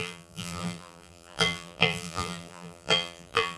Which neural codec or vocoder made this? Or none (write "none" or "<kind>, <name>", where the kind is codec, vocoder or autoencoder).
vocoder, BigVGAN v2